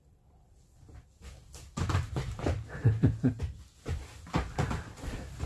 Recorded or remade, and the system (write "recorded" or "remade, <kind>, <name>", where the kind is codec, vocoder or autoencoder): recorded